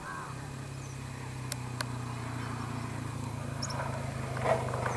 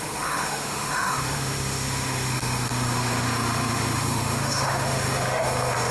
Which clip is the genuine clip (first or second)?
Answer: first